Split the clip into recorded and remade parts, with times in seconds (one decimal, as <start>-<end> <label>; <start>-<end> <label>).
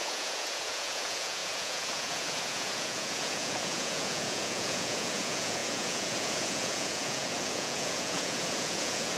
0.0-9.2 remade